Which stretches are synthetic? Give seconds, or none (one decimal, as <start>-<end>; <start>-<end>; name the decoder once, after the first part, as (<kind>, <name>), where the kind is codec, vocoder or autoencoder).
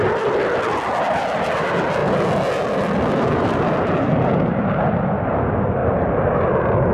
5.8-6.9 (vocoder, BigVGAN v2)